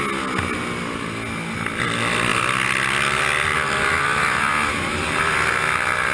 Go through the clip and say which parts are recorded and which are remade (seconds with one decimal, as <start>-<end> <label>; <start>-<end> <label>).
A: 0.0-6.1 recorded